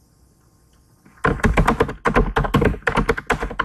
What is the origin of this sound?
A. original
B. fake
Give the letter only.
A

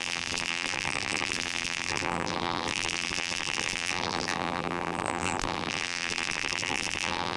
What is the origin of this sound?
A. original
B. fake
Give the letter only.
B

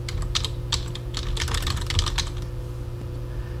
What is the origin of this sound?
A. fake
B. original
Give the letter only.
B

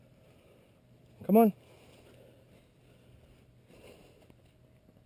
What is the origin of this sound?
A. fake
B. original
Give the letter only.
B